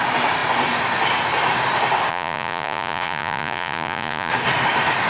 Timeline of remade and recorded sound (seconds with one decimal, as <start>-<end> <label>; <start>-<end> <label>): 0.0-2.1 recorded; 2.1-4.3 remade; 4.3-5.1 recorded